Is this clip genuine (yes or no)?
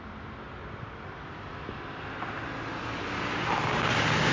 yes